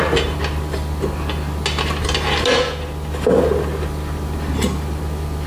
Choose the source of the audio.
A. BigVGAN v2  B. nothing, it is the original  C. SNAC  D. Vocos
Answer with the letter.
B